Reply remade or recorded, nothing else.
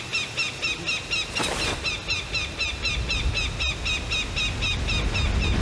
recorded